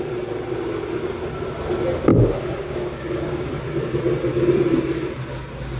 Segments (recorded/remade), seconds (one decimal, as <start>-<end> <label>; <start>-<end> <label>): 0.0-2.1 recorded; 2.1-3.5 remade; 3.5-5.8 recorded